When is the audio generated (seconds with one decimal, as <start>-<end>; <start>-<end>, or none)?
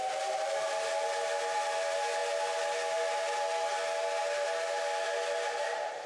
none